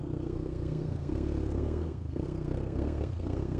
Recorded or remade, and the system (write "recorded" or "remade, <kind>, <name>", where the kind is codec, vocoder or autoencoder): remade, codec, SNAC